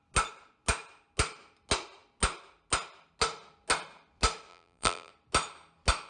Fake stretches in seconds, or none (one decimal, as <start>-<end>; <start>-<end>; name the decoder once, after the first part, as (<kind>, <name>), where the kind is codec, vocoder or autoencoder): 4.5-5.1 (vocoder, BigVGAN v2)